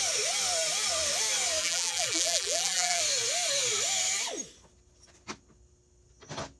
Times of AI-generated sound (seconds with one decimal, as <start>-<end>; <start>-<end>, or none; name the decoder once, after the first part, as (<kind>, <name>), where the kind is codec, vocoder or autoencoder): 1.6-3.0 (vocoder, BigVGAN v2)